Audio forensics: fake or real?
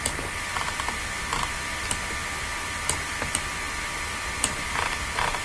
real